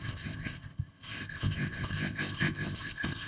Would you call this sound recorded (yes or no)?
no